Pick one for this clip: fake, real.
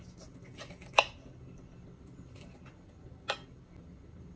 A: real